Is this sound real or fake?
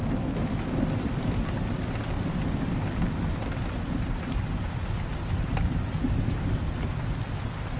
real